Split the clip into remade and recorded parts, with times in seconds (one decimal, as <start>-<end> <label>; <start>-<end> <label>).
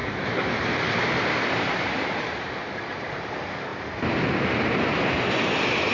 0.0-3.1 remade; 3.1-5.9 recorded